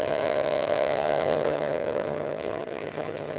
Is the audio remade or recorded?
remade